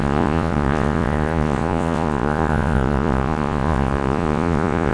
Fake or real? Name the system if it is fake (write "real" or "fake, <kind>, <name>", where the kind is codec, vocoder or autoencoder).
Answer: fake, vocoder, Vocos